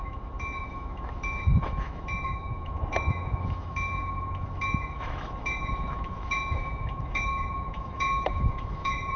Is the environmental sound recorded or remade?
remade